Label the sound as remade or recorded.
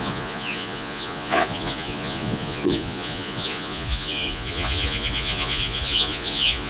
remade